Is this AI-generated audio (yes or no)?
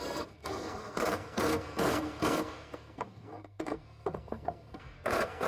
yes